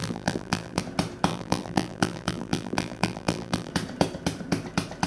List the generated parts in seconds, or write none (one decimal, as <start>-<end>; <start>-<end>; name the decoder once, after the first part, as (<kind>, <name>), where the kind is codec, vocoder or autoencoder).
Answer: 0.0-0.8 (vocoder, BigVGAN v2); 1.3-3.7